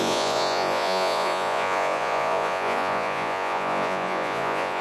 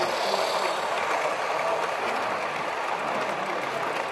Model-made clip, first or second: first